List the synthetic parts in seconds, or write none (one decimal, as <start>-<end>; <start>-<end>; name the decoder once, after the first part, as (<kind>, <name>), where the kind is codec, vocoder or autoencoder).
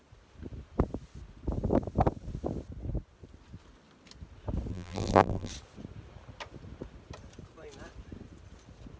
4.7-5.5 (vocoder, BigVGAN v2)